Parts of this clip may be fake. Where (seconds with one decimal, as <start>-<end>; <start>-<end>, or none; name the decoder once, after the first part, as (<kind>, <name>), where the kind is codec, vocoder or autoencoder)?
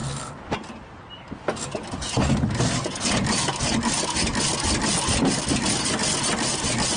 none